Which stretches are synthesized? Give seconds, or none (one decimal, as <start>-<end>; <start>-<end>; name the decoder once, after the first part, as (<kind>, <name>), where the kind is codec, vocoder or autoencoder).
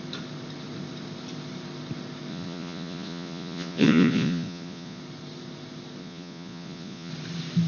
2.3-5.0 (vocoder, Vocos); 6.0-7.1